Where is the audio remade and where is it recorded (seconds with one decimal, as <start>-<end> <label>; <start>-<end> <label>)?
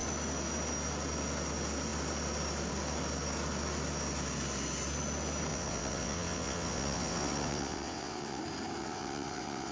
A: 0.0-5.5 recorded; 5.5-8.4 remade; 8.4-8.8 recorded; 8.8-9.7 remade